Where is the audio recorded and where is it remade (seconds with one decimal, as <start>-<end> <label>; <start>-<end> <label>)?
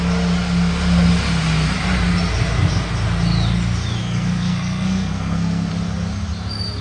0.0-4.0 recorded; 4.0-5.7 remade; 5.7-6.8 recorded